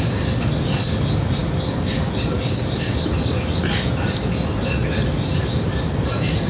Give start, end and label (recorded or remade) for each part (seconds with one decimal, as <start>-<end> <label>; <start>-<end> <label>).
0.0-6.5 recorded